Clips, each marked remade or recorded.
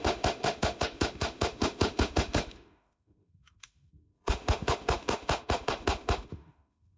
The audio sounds remade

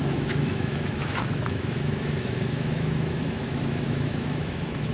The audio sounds remade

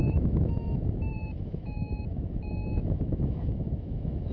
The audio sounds remade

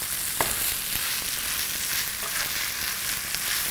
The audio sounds recorded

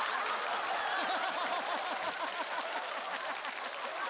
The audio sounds recorded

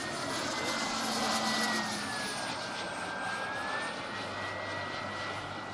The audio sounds recorded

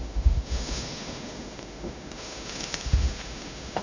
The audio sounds remade